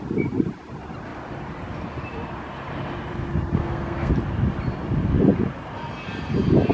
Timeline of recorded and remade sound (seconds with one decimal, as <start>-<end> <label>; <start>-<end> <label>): 0.0-3.6 recorded; 3.6-4.1 remade; 4.1-6.7 recorded